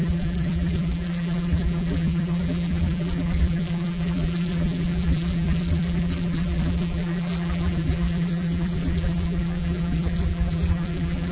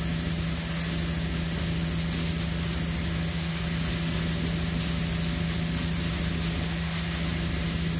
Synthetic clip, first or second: first